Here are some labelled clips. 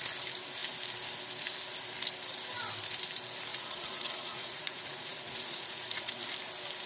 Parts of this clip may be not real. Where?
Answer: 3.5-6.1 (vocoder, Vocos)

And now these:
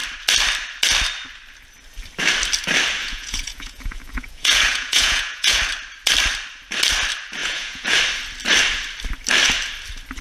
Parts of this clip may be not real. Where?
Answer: 3.0-5.6 (vocoder, Vocos); 7.4-8.0

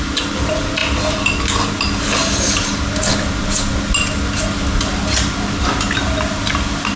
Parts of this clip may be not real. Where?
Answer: none